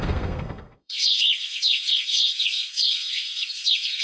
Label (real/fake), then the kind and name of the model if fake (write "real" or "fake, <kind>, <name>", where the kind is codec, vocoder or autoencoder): fake, codec, SNAC